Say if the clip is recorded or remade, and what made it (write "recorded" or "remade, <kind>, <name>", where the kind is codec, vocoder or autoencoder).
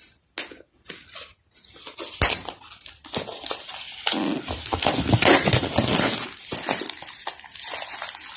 recorded